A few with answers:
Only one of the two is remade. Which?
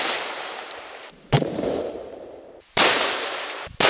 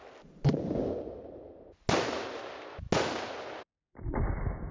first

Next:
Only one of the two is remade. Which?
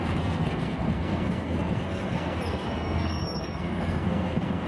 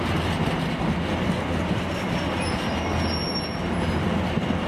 first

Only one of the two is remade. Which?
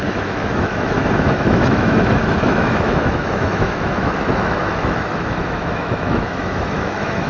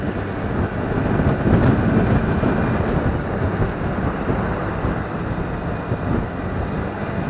first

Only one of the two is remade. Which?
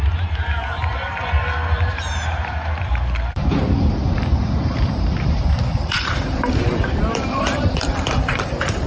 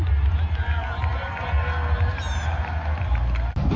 first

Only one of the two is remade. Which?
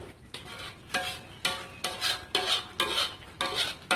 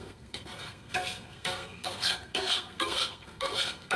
second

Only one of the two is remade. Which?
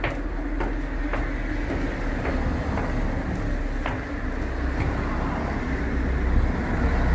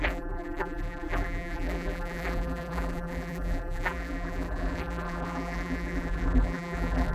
second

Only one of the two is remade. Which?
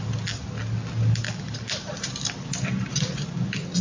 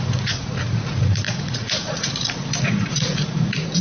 second